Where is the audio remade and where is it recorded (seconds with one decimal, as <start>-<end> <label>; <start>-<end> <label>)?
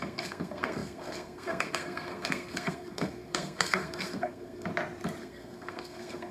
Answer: 0.0-4.7 remade; 4.7-5.2 recorded; 5.2-6.3 remade